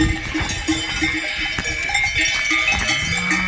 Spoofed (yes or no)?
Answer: no